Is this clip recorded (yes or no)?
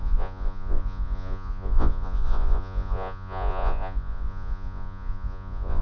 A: no